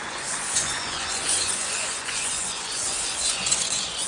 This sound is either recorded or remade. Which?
remade